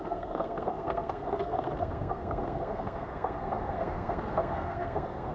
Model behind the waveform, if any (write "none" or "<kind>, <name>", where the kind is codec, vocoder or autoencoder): codec, SNAC